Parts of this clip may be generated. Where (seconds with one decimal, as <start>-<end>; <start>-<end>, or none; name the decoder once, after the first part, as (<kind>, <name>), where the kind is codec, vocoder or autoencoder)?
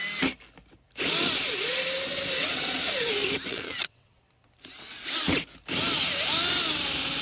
2.4-2.9 (vocoder, WaveNeXt); 3.5-4.2